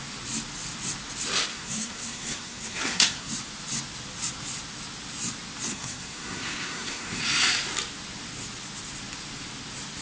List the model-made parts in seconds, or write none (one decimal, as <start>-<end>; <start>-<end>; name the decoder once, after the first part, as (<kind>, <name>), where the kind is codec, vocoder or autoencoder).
1.5-3.3 (codec, SNAC); 5.7-7.2